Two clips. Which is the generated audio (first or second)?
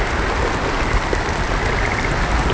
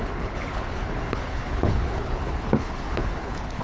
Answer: second